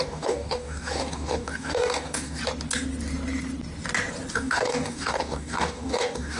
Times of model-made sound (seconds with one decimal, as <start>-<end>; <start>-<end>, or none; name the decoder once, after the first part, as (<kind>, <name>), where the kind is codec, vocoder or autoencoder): 0.0-2.4 (codec, DAC); 4.3-6.4